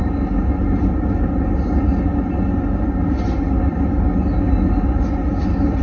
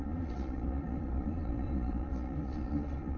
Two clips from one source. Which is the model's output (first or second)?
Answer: second